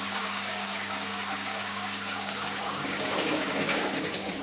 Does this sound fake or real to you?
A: fake